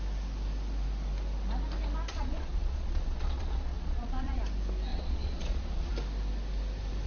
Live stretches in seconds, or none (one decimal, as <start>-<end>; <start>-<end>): 0.0-2.1; 4.4-4.9; 5.9-7.1